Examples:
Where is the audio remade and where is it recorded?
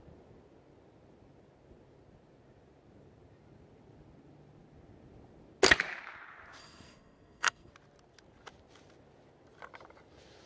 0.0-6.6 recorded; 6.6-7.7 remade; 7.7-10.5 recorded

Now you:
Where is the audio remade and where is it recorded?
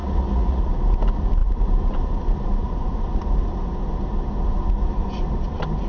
0.0-0.6 remade; 0.6-5.9 recorded